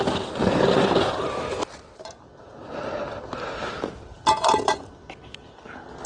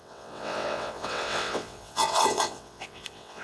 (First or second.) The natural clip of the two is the first